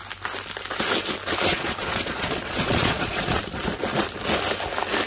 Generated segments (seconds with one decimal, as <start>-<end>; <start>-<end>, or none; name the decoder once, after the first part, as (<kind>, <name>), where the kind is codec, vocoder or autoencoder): 1.5-3.4 (vocoder, Vocos)